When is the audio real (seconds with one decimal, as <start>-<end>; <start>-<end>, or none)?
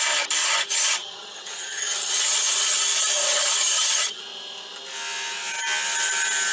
0.0-0.4; 2.8-3.2; 4.2-6.5